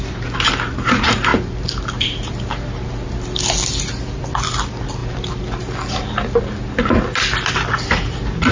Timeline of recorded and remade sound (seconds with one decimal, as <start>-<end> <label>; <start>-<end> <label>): 0.0-1.3 recorded; 1.3-2.4 remade; 2.4-8.5 recorded